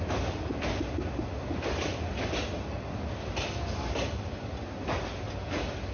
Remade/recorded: recorded